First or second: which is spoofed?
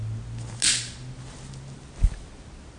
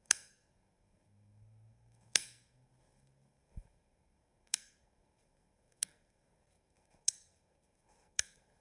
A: second